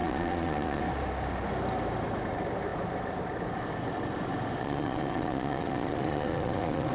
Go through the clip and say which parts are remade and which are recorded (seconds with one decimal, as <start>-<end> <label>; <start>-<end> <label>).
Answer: 0.0-0.8 remade; 0.8-4.6 recorded; 4.6-6.9 remade